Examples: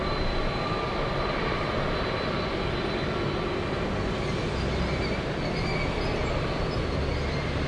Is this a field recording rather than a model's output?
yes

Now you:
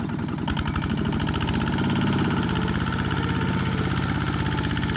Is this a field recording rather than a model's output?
yes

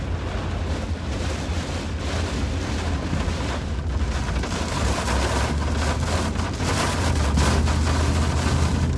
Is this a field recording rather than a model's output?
yes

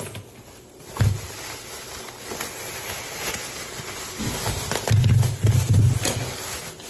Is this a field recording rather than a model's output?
yes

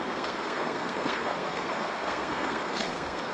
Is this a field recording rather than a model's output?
no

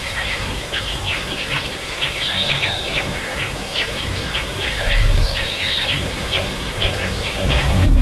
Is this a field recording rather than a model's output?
no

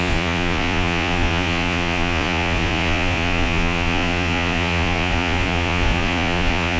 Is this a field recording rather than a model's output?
no